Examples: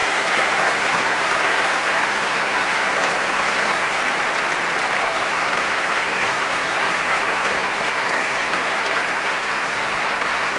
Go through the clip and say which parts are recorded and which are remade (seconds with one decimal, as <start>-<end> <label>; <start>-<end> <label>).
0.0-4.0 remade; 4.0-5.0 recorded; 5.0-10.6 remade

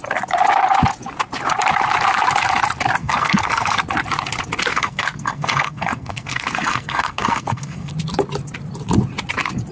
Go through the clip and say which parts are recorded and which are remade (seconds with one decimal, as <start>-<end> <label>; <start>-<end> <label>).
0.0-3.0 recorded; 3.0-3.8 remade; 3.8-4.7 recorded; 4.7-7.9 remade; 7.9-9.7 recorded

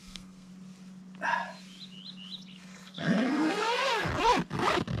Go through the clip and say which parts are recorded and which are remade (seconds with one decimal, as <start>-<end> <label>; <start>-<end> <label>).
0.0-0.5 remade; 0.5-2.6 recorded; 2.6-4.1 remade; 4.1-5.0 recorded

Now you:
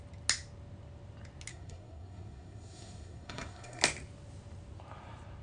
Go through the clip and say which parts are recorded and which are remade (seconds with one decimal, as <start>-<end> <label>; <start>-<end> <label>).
0.0-1.5 recorded; 1.5-3.8 remade; 3.8-5.4 recorded